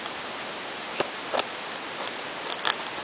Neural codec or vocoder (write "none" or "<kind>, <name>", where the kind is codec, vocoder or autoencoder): none